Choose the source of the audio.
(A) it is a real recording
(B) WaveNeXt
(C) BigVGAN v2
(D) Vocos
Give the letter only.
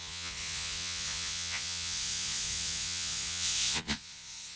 D